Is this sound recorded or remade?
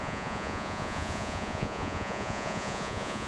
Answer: remade